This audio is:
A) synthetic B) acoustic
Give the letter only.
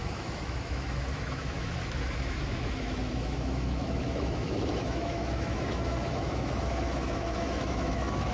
A